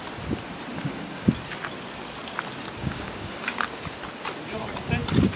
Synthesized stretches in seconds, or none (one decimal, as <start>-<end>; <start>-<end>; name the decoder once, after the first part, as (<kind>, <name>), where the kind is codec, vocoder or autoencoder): 0.8-1.3 (codec, DAC); 2.8-3.6